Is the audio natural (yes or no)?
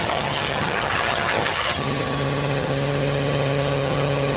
no